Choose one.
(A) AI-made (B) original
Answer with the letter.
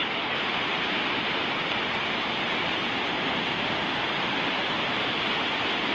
B